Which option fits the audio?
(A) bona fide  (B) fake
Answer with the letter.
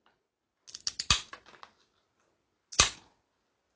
A